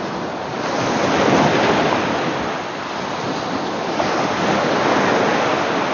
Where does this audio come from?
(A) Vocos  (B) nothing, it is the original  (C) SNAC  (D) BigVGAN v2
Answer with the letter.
B